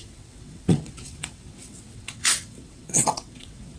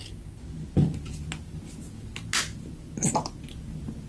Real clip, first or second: second